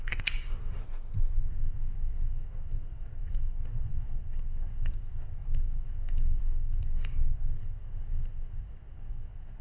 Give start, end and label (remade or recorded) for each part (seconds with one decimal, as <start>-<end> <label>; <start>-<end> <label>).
0.0-0.8 remade; 0.8-1.3 recorded; 1.3-9.6 remade